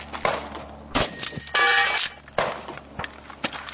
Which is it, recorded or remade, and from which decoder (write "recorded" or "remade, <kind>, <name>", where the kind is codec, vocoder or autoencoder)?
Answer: recorded